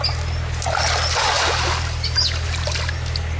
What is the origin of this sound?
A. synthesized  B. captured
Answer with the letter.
B